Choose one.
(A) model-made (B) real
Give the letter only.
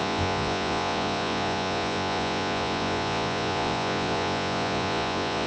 A